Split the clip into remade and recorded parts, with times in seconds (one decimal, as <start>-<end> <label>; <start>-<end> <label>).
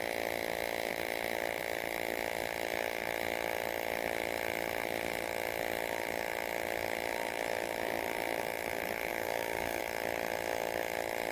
0.0-9.1 recorded; 9.1-9.8 remade; 9.8-11.3 recorded